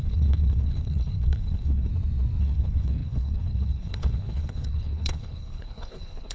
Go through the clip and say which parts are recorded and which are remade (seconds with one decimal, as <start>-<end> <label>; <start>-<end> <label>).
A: 0.0-1.9 remade; 1.9-2.4 recorded; 2.4-6.3 remade